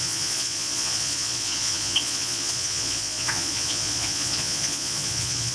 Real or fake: fake